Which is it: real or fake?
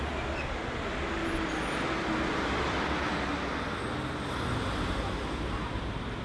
real